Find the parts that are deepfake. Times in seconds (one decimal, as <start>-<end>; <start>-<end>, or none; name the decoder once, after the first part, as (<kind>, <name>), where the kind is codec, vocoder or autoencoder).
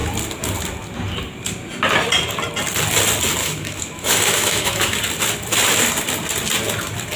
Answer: 3.4-5.0 (autoencoder, DAC-VAE)